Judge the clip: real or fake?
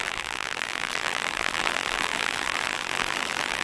fake